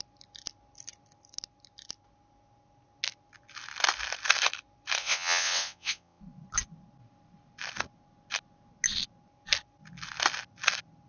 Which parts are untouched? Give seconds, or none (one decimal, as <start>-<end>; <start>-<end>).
0.0-5.0; 6.2-11.1